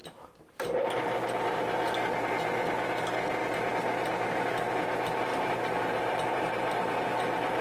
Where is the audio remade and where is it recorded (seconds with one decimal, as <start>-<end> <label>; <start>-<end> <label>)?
0.0-1.0 remade; 1.0-3.4 recorded; 3.4-4.7 remade; 4.7-5.3 recorded; 5.3-7.1 remade; 7.1-7.6 recorded